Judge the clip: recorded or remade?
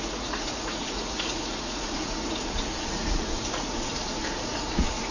remade